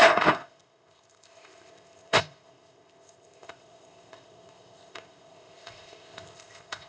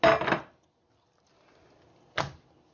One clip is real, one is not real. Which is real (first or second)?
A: second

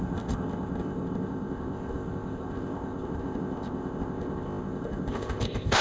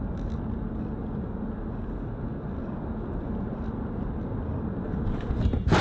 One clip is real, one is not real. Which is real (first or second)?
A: second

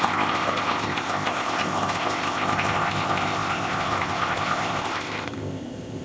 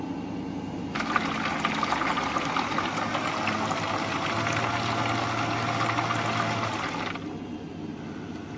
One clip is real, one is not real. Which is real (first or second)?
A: second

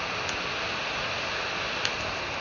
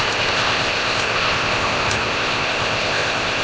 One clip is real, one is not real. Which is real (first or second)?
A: first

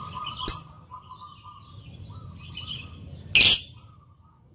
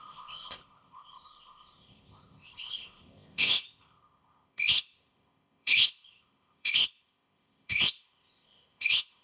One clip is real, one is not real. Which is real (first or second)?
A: first